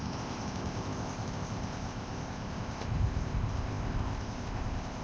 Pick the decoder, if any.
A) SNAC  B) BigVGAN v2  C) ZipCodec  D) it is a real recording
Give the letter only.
C